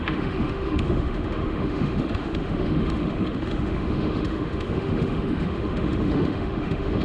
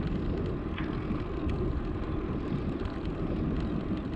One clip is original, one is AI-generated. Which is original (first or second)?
second